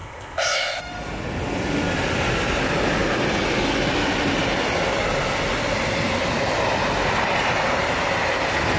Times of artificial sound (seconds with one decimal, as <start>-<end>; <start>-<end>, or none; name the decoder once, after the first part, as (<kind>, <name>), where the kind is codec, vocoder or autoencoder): 0.0-0.8 (codec, ZipCodec)